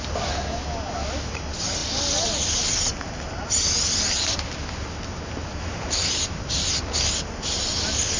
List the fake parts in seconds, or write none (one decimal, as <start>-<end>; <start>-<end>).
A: none